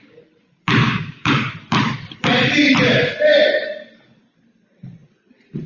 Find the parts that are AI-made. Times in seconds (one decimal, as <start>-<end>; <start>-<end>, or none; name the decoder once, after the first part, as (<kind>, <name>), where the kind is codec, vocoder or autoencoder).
0.8-1.3 (codec, DAC)